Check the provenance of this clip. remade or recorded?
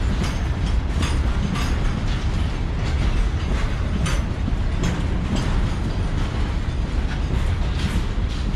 recorded